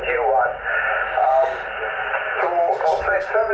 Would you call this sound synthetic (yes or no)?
no